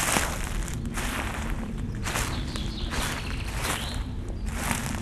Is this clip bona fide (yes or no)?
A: yes